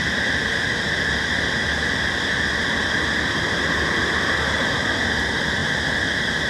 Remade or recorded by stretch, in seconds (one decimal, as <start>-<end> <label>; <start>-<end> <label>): 0.0-6.5 recorded